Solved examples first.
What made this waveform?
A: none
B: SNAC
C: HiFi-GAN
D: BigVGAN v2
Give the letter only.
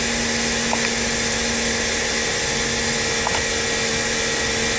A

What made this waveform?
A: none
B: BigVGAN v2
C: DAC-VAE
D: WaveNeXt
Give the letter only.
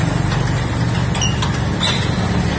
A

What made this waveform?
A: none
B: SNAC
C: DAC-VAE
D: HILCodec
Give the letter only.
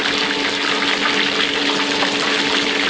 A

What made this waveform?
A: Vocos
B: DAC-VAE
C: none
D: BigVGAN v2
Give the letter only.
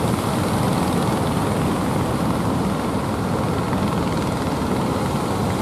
C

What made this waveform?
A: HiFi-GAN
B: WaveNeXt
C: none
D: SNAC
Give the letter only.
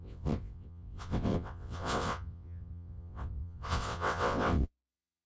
B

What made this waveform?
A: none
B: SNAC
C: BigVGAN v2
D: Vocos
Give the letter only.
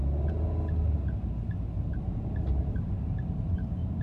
A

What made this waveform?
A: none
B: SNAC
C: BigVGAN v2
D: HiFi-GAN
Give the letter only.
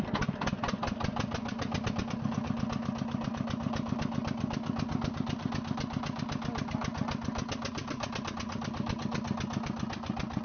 A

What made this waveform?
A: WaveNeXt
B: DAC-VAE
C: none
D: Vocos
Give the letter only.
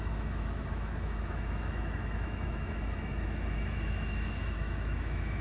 B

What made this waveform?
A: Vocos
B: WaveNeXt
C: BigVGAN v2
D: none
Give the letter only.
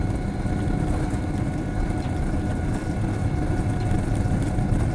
D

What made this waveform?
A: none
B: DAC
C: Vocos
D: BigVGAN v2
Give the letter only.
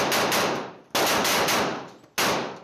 A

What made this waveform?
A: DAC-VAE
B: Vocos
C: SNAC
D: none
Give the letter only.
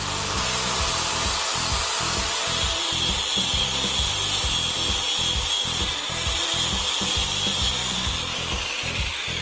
D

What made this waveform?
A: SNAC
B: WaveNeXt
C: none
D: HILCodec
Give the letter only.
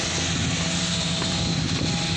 C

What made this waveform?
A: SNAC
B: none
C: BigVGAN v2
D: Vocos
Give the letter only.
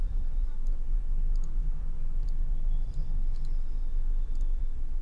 C